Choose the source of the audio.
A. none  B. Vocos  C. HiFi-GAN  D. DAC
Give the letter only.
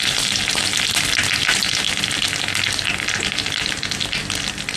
A